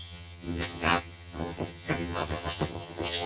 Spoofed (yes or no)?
yes